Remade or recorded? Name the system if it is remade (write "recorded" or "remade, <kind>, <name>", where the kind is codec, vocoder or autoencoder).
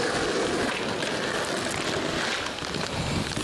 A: recorded